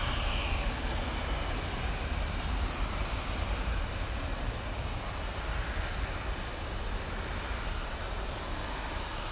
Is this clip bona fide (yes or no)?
yes